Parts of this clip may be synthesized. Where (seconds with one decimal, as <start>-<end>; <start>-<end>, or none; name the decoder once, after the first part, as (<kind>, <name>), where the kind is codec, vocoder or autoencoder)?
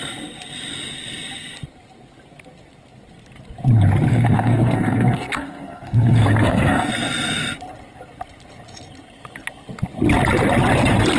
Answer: 4.1-6.9 (codec, SNAC)